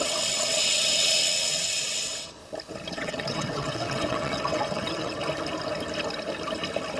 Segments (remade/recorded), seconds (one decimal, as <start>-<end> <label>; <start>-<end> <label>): 0.0-2.4 remade; 2.4-2.9 recorded; 2.9-5.2 remade; 5.2-7.0 recorded